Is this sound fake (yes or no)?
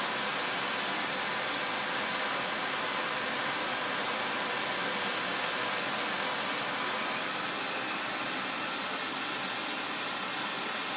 no